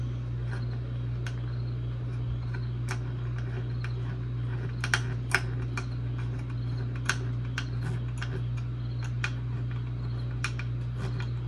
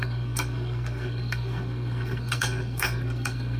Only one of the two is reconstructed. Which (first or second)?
second